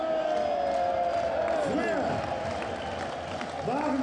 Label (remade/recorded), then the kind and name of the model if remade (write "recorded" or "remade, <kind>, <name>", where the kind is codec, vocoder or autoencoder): recorded